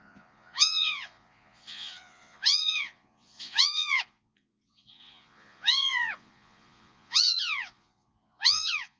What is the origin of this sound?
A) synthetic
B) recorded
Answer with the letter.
A